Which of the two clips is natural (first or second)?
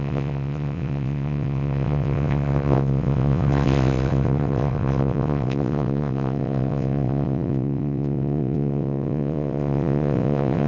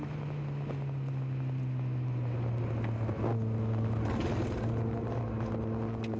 second